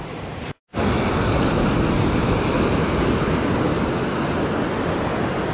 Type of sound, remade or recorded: recorded